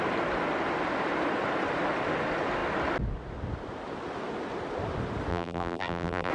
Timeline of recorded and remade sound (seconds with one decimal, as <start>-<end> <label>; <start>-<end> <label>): 0.0-5.3 recorded; 5.3-6.3 remade